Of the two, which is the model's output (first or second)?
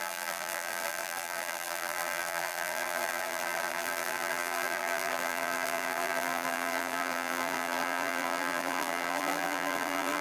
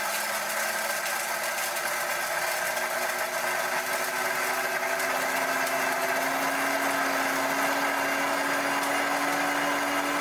first